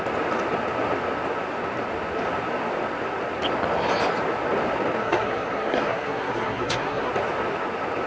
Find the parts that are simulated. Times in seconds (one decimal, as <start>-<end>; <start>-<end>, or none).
5.0-7.1